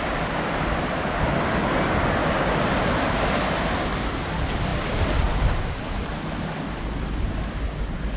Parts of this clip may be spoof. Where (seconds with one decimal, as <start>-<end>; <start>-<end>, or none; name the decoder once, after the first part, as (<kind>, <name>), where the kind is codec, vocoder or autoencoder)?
none

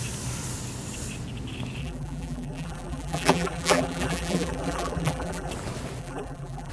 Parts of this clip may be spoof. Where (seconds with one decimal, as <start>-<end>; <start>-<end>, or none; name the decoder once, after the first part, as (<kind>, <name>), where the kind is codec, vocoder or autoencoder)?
1.8-5.5 (vocoder, BigVGAN v2); 6.0-6.7

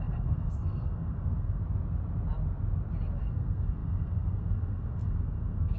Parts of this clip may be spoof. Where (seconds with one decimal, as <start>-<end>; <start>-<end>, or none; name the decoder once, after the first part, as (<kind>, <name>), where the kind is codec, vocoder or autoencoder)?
0.0-1.6 (codec, SNAC); 3.2-5.8

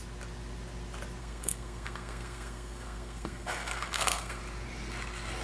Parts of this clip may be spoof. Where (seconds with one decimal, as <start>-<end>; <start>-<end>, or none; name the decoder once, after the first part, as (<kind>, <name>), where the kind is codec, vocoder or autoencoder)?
1.2-4.4 (codec, SNAC)

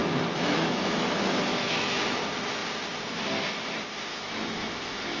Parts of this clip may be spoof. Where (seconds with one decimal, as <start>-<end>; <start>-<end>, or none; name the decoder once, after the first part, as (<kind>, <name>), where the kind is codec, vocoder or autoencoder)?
0.0-2.2 (autoencoder, DAC-VAE); 4.1-5.2

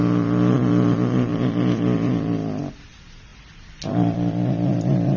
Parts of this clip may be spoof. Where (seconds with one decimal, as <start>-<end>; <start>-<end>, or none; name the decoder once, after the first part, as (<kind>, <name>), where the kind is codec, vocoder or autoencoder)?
none